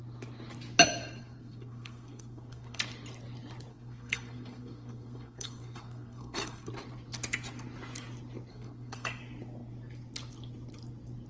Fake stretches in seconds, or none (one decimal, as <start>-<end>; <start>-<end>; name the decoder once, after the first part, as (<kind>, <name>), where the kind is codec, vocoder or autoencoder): 1.2-2.8 (codec, SNAC); 3.7-6.7; 8.5-9.2

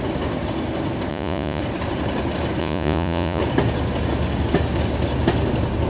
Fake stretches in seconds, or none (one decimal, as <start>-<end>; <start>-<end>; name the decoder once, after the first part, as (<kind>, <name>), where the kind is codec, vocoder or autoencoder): 1.1-1.6 (vocoder, Vocos); 2.6-3.4